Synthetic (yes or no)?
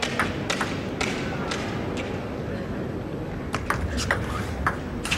no